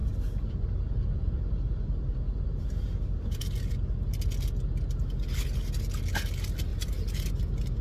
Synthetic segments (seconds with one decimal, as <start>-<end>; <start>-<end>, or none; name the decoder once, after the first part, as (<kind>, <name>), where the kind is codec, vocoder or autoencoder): 0.0-3.4 (vocoder, BigVGAN v2); 6.7-7.3